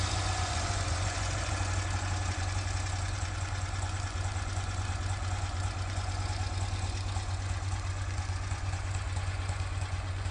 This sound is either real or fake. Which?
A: fake